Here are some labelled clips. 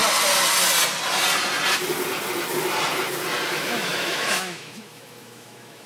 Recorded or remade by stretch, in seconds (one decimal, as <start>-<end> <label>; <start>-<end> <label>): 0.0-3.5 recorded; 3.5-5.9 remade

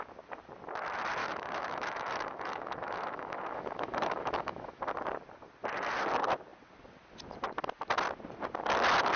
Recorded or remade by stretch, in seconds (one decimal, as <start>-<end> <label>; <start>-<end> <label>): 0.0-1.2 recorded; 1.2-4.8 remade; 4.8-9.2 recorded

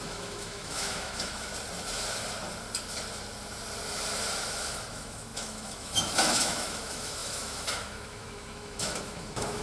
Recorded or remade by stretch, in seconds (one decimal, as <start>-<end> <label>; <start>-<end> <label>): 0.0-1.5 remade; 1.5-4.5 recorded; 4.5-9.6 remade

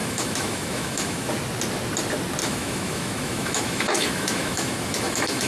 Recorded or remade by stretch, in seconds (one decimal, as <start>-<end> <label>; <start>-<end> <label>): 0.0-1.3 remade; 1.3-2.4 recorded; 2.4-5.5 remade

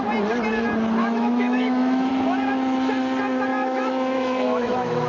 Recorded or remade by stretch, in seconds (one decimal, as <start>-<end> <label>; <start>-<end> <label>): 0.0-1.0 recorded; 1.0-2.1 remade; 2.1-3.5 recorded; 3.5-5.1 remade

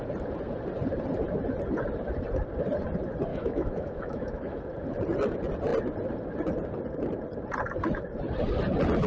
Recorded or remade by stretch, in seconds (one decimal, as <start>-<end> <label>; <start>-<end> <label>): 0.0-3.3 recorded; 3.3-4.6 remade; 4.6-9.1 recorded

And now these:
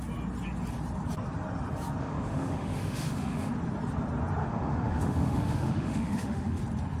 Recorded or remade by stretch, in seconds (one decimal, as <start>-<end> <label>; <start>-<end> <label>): 0.0-2.0 recorded; 2.0-3.5 remade; 3.5-4.4 recorded; 4.4-6.6 remade; 6.6-7.0 recorded

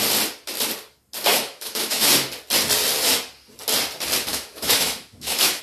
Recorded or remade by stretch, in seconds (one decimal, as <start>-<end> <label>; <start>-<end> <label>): 0.0-1.3 recorded; 1.3-2.1 remade; 2.1-4.3 recorded; 4.3-5.6 remade